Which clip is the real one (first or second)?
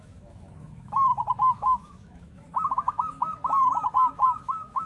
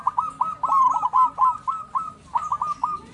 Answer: second